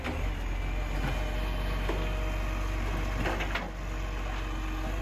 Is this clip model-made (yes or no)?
no